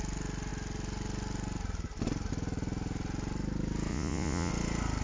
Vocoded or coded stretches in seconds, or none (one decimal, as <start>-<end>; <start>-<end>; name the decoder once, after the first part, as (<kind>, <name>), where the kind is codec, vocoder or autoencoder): 3.9-4.5 (vocoder, Vocos)